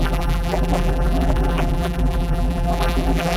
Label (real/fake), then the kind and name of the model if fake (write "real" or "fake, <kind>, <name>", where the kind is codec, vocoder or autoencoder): fake, vocoder, BigVGAN v2